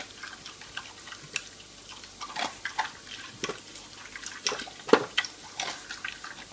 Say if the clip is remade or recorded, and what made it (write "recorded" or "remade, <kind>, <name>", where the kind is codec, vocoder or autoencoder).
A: recorded